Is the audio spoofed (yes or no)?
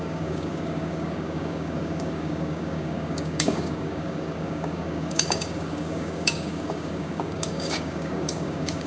yes